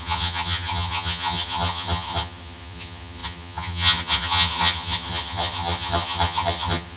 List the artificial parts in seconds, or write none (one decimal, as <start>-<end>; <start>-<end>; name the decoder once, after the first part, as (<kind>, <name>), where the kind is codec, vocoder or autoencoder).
0.0-7.0 (vocoder, HiFi-GAN)